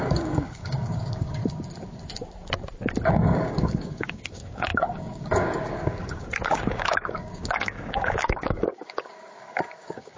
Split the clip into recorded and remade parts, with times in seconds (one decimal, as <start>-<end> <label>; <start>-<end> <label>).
0.0-1.4 remade; 1.4-3.1 recorded; 3.1-10.2 remade